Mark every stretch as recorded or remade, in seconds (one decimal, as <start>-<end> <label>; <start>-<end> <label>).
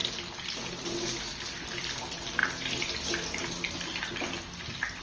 0.0-5.0 recorded